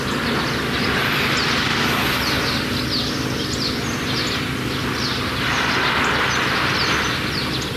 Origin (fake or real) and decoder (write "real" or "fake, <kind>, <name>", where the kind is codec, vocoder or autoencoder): real